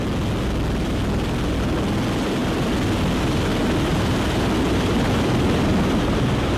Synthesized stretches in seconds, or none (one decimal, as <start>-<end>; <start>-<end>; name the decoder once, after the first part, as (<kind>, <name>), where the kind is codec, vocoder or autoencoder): none